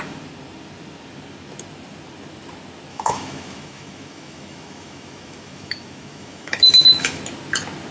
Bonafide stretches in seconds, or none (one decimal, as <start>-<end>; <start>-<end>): 0.0-2.9; 7.2-7.9